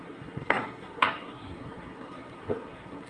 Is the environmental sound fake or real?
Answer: fake